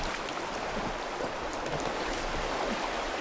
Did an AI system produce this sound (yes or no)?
no